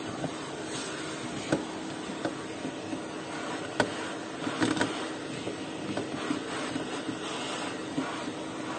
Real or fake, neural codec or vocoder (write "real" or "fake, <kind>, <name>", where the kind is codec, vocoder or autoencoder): real